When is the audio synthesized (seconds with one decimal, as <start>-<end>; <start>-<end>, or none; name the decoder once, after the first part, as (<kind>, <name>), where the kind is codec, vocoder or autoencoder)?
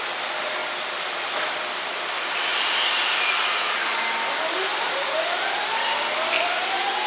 none